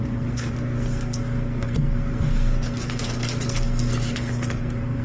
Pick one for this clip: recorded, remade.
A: remade